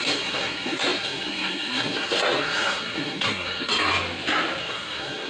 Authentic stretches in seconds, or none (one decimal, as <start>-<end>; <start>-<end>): 3.7-4.6